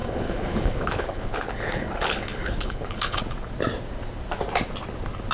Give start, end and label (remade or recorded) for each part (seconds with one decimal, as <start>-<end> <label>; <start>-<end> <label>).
0.0-3.2 remade; 3.2-5.3 recorded